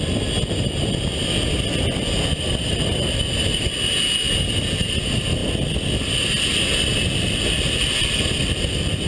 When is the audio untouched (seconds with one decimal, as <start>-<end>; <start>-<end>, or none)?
0.0-9.1